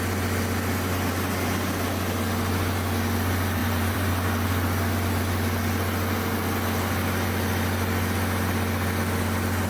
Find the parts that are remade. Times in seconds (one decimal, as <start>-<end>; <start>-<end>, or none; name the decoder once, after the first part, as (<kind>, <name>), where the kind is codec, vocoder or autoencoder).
3.6-4.1 (vocoder, BigVGAN v2)